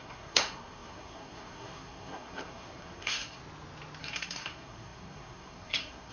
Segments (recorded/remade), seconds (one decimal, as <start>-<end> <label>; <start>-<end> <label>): 0.0-3.4 remade; 3.4-4.0 recorded; 4.0-6.1 remade